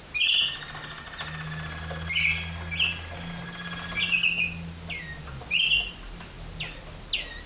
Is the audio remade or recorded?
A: recorded